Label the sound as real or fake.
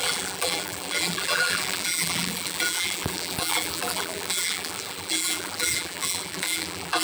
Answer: fake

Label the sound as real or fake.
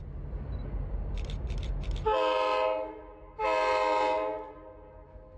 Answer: real